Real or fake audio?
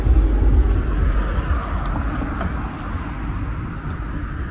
real